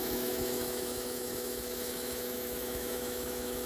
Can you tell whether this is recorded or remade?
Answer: remade